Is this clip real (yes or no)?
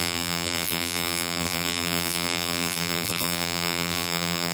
no